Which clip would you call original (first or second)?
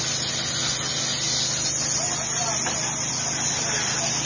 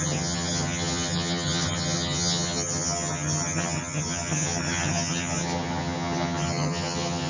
first